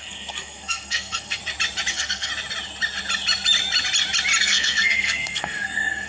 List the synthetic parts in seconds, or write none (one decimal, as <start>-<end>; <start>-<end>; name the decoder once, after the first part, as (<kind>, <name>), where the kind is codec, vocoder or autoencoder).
0.0-1.4 (codec, SNAC); 1.9-2.3; 4.4-6.1